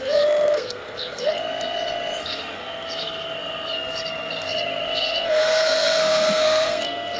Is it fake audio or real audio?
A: fake